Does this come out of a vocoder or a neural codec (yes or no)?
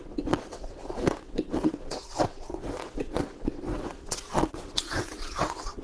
yes